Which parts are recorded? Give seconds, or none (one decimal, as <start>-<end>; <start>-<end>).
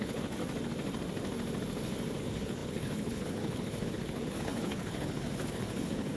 0.4-2.2